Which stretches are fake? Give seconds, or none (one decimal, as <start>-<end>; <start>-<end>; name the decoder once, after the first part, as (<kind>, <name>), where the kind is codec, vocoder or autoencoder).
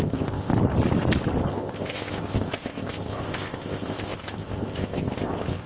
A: 0.0-0.5 (codec, ZipCodec); 1.5-5.7